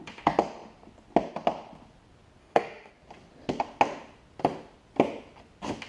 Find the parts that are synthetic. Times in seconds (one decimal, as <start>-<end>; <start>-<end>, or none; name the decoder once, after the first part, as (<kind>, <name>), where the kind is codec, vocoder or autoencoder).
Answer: 2.4-2.9 (autoencoder, DAC-VAE)